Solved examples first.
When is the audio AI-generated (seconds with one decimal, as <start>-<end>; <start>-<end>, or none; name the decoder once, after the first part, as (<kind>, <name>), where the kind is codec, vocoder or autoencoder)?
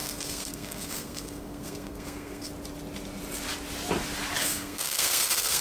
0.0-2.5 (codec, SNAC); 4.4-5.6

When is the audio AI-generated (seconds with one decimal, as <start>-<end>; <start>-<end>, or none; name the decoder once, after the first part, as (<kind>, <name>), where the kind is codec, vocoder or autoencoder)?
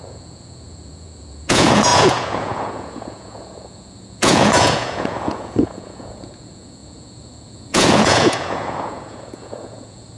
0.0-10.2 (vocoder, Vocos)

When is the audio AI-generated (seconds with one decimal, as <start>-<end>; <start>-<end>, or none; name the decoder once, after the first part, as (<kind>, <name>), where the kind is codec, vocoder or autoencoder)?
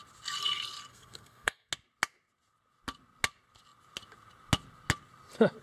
0.9-1.7 (codec, SNAC)